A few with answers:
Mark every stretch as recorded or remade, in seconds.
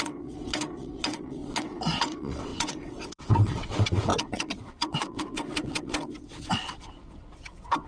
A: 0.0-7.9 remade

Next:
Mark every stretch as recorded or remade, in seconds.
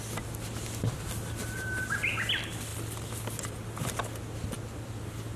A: 0.0-5.4 recorded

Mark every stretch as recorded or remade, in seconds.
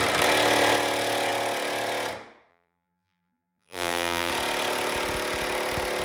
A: 0.0-2.5 recorded; 2.5-4.3 remade; 4.3-6.0 recorded